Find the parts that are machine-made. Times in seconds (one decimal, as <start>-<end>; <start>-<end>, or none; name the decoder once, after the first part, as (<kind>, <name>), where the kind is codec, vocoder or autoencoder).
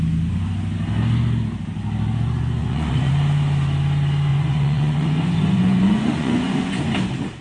2.6-3.1 (vocoder, Vocos); 4.3-6.8